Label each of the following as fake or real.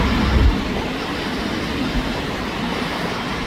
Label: real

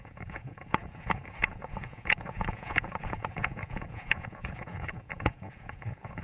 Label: fake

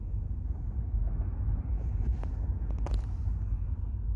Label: real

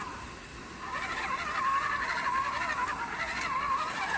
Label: real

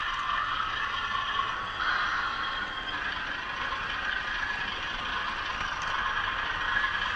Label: real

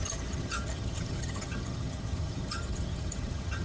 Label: fake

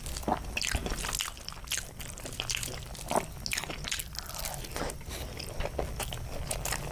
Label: real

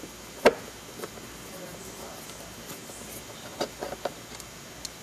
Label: real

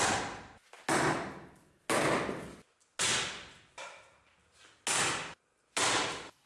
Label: real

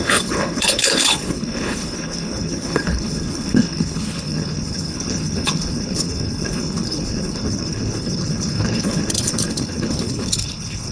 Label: fake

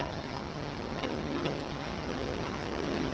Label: fake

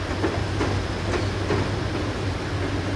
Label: real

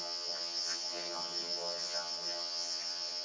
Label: fake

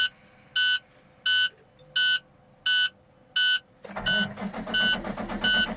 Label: real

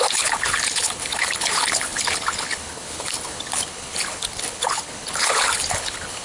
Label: fake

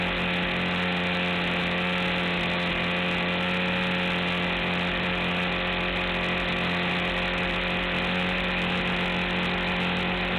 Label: real